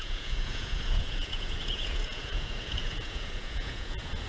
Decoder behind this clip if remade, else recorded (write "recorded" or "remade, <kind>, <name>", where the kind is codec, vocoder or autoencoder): remade, vocoder, Vocos